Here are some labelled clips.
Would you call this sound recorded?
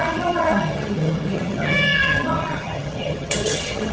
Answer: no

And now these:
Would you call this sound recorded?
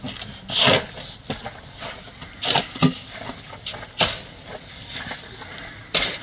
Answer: yes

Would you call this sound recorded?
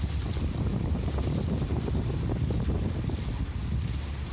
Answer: yes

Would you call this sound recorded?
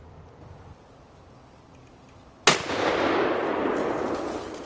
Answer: yes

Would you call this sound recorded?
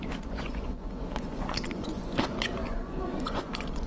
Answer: no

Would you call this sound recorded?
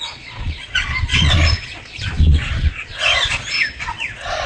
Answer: no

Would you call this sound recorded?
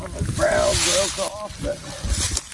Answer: yes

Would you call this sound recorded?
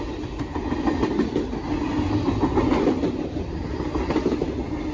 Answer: yes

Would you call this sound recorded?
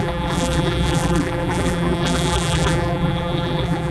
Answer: no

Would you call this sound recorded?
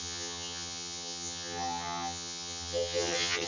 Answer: no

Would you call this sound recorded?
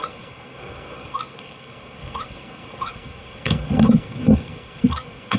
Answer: no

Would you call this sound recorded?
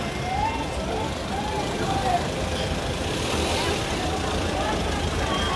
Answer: no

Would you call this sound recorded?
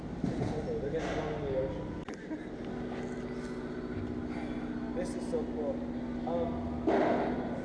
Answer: yes